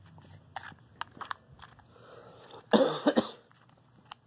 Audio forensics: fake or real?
real